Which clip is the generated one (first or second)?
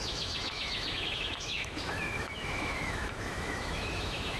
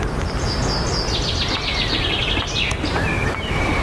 first